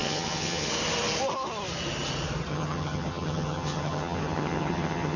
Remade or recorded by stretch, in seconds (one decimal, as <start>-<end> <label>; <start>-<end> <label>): 0.0-0.7 remade; 0.7-2.5 recorded; 2.5-5.2 remade